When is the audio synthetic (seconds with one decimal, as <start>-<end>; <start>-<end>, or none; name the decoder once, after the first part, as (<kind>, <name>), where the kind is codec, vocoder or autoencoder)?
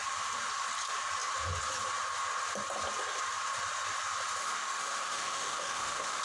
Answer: 4.4-6.2 (autoencoder, DAC-VAE)